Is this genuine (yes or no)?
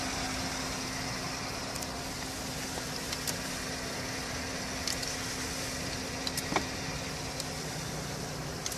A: yes